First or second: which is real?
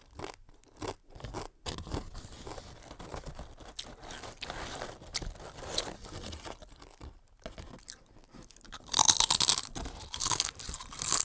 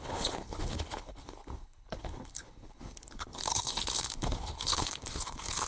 first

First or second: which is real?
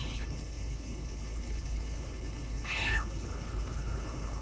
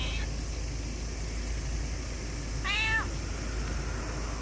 second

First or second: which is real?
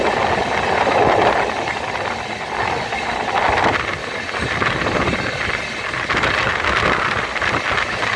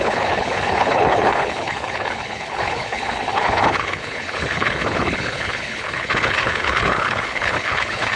first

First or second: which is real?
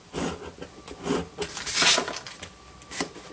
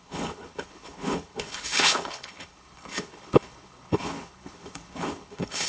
first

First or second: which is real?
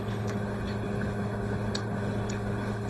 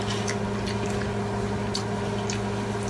second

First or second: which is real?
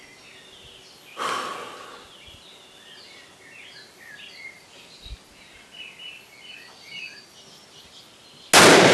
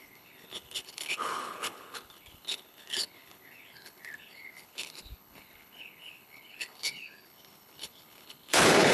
first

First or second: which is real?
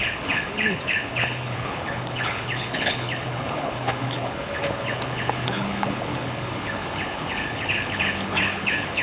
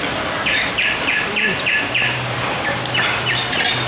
second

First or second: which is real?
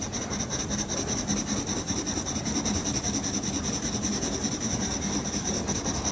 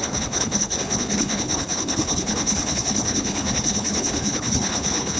first